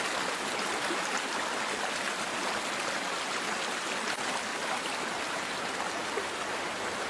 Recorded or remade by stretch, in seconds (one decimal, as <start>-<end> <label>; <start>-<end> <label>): 0.0-7.1 recorded